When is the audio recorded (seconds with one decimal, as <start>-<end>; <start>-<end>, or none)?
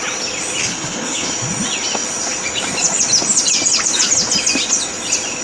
0.0-0.6; 1.3-5.4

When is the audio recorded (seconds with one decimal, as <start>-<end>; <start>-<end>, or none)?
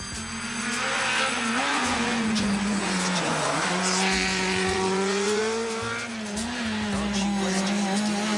0.0-1.7; 5.4-8.4